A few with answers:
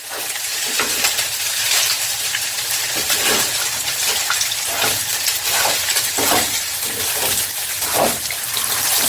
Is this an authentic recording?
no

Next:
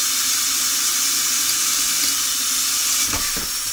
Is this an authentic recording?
yes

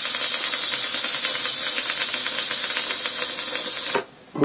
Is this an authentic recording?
yes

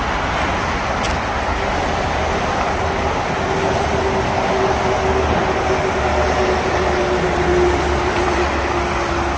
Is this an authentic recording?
yes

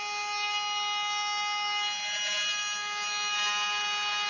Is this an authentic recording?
yes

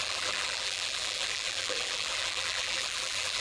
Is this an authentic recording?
no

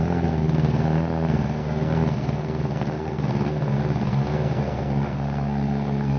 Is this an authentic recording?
no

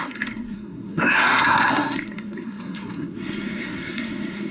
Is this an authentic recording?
no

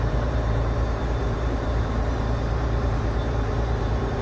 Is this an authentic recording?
no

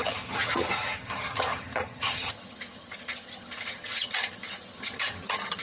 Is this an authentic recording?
no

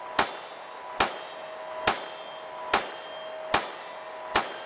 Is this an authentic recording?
yes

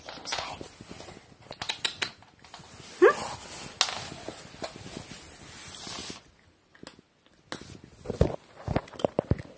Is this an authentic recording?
yes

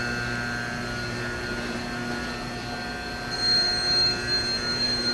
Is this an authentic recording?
yes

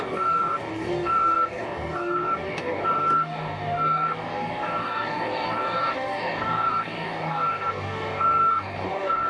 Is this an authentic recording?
no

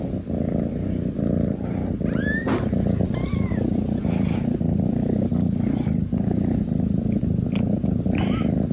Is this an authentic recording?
yes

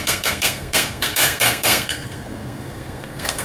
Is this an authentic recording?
no